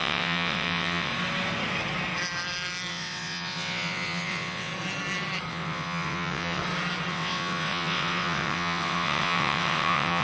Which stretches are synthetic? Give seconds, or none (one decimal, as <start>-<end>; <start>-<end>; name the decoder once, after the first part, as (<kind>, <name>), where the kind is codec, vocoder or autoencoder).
0.0-1.1 (vocoder, WaveNeXt); 2.9-4.7; 5.5-6.6; 7.1-10.2